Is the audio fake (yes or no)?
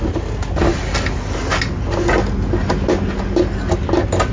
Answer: no